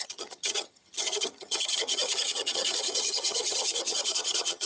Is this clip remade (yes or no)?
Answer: yes